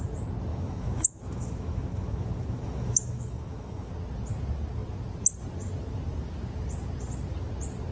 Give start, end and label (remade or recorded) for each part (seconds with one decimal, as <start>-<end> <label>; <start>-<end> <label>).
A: 0.0-0.5 recorded; 0.5-3.9 remade; 3.9-7.9 recorded